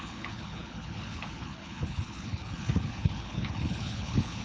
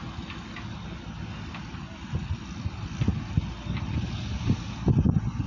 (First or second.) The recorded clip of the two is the second